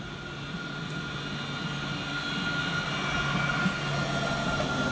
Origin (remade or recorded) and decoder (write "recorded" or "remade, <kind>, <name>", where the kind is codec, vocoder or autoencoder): recorded